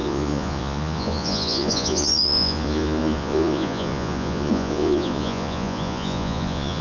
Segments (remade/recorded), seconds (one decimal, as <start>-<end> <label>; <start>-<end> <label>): 0.0-6.8 remade